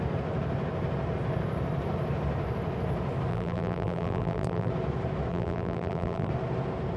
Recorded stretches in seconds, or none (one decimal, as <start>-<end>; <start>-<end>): 0.0-3.3; 4.7-5.3; 6.3-7.0